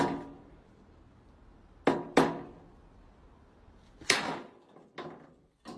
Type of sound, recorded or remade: recorded